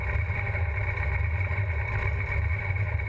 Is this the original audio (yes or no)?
yes